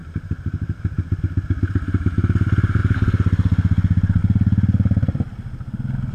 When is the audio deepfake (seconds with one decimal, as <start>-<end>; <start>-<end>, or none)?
0.0-1.2